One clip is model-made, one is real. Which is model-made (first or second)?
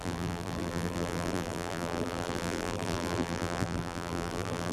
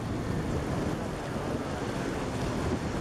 first